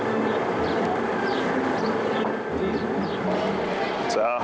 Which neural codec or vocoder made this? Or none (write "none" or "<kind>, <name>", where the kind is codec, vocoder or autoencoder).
none